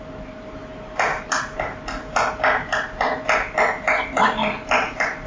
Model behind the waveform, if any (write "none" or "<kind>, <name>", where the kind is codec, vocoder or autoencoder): none